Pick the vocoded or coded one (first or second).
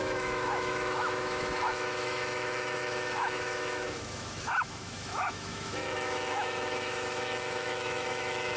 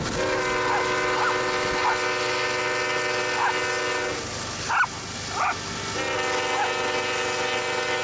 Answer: first